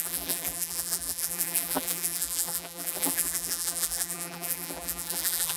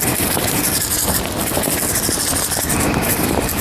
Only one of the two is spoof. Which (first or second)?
first